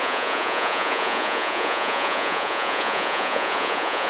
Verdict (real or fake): fake